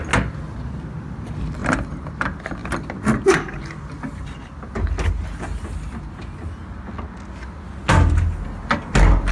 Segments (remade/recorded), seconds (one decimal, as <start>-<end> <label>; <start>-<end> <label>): 0.0-9.3 recorded